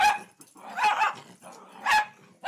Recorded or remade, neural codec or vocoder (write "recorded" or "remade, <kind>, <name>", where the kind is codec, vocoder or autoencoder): recorded